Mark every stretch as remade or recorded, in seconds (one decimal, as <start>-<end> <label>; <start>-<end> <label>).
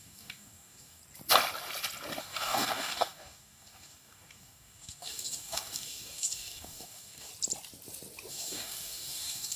0.0-1.0 remade; 1.0-2.2 recorded; 2.2-7.3 remade; 7.3-8.3 recorded; 8.3-9.6 remade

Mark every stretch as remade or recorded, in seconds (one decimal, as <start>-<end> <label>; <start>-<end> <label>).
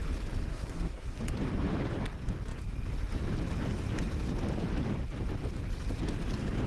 0.0-0.5 recorded; 0.5-1.2 remade; 1.2-6.7 recorded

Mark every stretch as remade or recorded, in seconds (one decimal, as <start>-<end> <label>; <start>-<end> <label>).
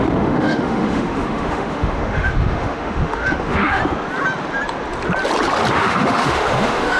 0.0-3.8 remade; 3.8-5.7 recorded; 5.7-7.0 remade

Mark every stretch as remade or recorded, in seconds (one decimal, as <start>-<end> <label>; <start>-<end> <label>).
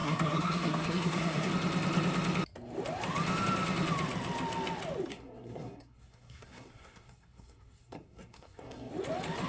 0.0-1.5 remade; 1.5-5.1 recorded; 5.1-8.9 remade; 8.9-9.5 recorded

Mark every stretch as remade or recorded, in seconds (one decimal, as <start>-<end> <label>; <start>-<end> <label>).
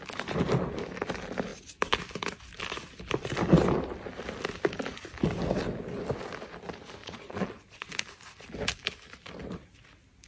0.0-7.0 recorded; 7.0-7.9 remade; 7.9-10.3 recorded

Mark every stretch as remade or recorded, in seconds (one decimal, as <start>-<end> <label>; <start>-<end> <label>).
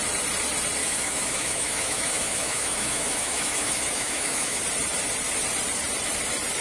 0.0-0.8 recorded; 0.8-4.6 remade; 4.6-6.6 recorded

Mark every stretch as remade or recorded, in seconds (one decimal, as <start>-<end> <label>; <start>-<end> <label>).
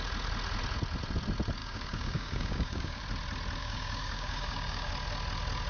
0.0-1.6 recorded; 1.6-3.0 remade; 3.0-3.6 recorded; 3.6-4.9 remade; 4.9-5.7 recorded